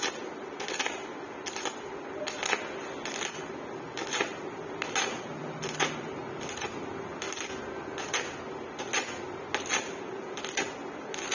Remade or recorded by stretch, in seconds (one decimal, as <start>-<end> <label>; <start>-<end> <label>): 0.0-11.3 recorded